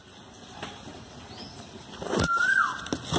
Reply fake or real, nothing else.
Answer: real